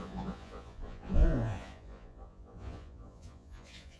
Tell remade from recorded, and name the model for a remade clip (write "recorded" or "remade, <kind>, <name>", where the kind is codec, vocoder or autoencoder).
remade, vocoder, Vocos